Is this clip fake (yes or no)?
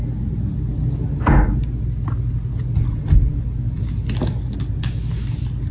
no